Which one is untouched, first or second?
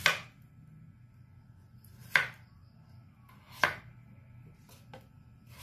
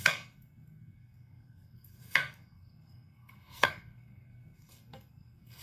first